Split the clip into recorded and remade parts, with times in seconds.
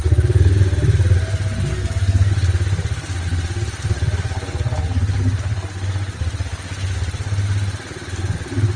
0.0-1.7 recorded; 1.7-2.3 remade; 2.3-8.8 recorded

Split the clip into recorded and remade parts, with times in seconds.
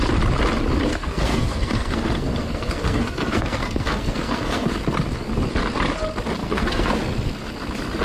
0.0-0.9 recorded; 0.9-4.7 remade; 4.7-6.4 recorded; 6.4-6.9 remade; 6.9-8.0 recorded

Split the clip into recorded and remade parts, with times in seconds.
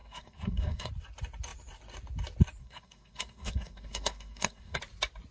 0.0-0.9 remade; 0.9-2.6 recorded; 2.6-4.8 remade; 4.8-5.3 recorded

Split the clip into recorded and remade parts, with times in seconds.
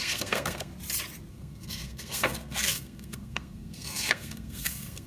0.0-0.7 remade; 0.7-1.3 recorded; 1.3-5.1 remade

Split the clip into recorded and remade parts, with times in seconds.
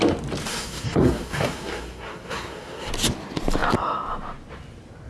0.0-0.5 recorded; 0.5-2.9 remade; 2.9-5.1 recorded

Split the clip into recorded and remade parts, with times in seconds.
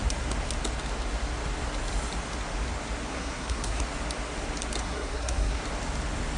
0.0-3.1 recorded; 3.1-3.8 remade; 3.8-4.8 recorded; 4.8-5.6 remade; 5.6-6.4 recorded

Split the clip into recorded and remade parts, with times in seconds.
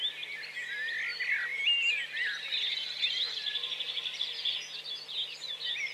0.0-5.9 recorded